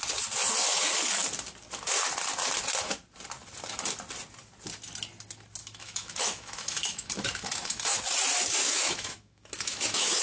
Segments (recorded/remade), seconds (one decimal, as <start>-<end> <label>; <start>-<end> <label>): 0.0-5.6 recorded; 5.6-8.0 remade; 8.0-8.6 recorded; 8.6-10.2 remade